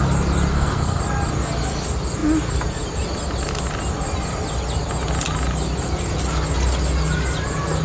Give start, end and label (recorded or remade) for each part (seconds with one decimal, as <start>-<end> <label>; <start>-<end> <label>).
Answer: 0.0-0.5 recorded; 0.5-1.0 remade; 1.0-7.8 recorded